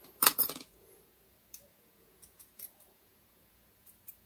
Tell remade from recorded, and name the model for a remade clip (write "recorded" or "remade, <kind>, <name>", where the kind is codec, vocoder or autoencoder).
remade, vocoder, Vocos